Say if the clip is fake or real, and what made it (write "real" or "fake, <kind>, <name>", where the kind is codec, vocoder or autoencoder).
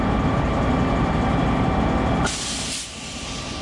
real